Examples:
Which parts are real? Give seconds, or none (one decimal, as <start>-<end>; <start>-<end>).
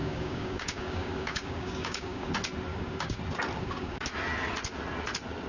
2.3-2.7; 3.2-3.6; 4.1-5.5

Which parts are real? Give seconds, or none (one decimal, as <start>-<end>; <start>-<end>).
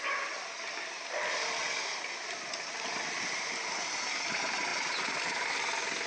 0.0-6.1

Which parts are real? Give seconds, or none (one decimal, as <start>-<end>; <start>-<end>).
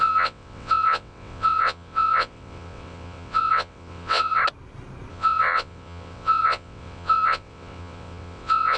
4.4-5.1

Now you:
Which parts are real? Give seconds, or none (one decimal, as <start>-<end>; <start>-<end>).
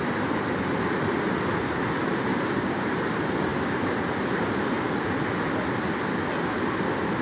0.0-2.3; 2.8-7.2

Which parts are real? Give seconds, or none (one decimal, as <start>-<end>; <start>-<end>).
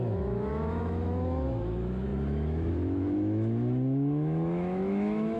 none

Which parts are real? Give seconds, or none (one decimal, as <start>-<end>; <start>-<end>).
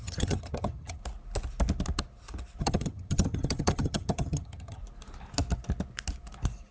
1.0-2.6; 4.8-6.7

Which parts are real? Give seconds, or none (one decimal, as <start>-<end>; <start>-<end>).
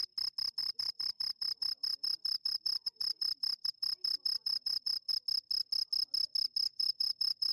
0.0-0.6; 5.1-6.7